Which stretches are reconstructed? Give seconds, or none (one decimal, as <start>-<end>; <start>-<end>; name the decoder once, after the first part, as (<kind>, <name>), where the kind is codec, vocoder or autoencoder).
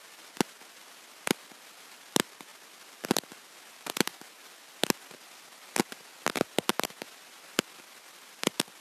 none